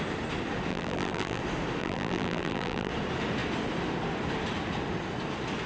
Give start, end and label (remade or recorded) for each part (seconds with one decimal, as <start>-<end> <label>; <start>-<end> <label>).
0.0-0.7 recorded; 0.7-1.4 remade; 1.4-1.8 recorded; 1.8-2.9 remade; 2.9-5.7 recorded